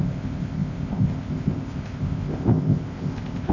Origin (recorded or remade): remade